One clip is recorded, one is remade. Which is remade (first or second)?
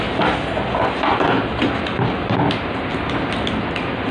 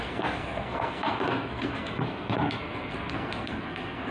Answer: second